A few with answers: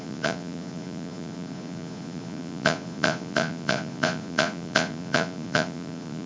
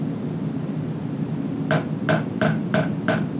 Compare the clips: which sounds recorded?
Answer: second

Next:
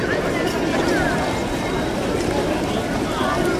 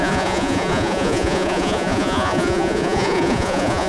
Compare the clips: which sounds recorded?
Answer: first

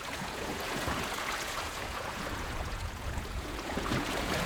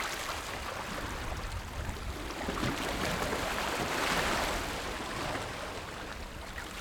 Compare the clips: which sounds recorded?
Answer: second